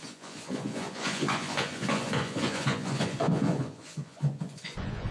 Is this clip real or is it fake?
fake